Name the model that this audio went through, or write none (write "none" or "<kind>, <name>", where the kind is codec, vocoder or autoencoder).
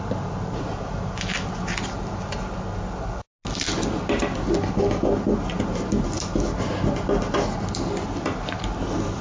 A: none